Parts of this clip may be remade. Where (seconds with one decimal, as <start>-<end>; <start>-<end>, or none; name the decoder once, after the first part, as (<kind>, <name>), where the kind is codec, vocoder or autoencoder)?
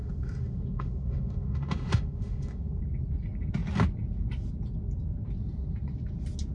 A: 0.0-2.8 (autoencoder, DAC-VAE)